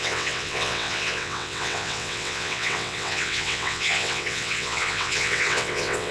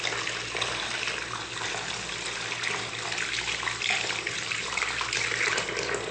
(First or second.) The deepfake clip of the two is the first